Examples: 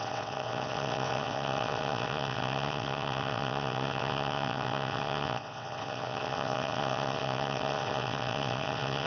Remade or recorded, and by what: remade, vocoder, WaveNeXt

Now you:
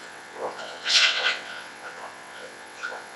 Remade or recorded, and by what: remade, vocoder, WaveNeXt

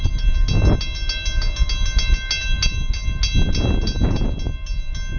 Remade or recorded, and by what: recorded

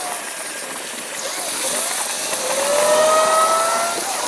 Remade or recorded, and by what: recorded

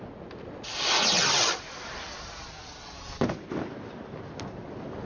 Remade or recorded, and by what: recorded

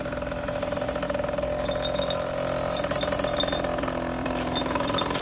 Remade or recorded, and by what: recorded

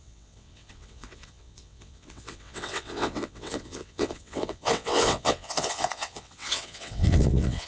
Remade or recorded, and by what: remade, vocoder, WaveNeXt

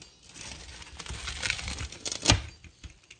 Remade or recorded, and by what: recorded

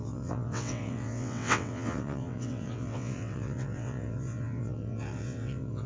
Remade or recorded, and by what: remade, vocoder, WaveNeXt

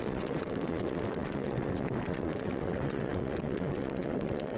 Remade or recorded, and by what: remade, vocoder, WaveNeXt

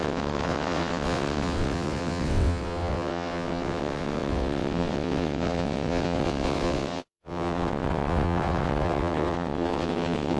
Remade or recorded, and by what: remade, vocoder, WaveNeXt